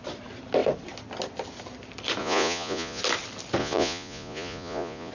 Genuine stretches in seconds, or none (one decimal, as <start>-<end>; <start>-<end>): 0.0-2.2; 3.0-3.6